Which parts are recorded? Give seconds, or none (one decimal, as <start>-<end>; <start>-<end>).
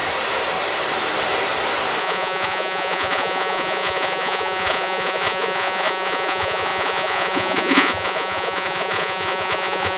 0.0-2.0